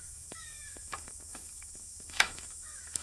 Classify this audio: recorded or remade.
remade